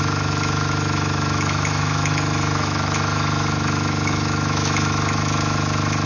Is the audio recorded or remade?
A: remade